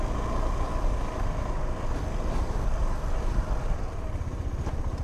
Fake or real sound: real